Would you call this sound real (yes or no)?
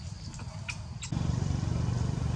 yes